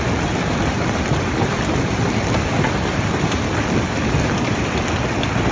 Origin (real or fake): real